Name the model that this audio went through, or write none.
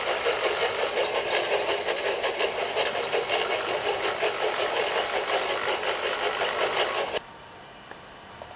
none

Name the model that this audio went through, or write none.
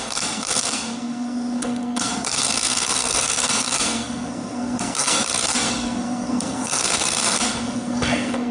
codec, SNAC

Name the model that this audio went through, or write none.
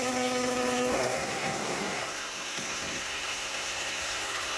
codec, SNAC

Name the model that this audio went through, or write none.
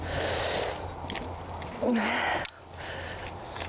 none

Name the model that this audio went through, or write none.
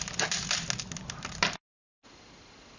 none